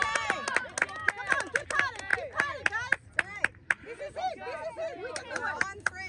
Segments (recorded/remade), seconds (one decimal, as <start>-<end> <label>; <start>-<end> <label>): 0.0-6.1 recorded